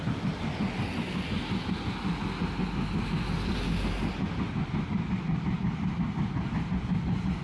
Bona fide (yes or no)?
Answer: yes